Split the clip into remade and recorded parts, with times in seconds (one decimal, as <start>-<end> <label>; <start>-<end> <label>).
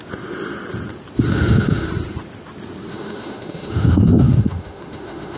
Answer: 0.0-1.3 recorded; 1.3-1.9 remade; 1.9-2.9 recorded; 2.9-5.4 remade